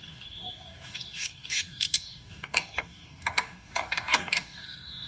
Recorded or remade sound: remade